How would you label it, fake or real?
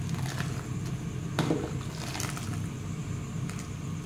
real